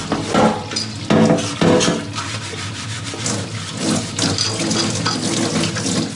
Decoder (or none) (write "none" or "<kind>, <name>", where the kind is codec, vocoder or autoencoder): none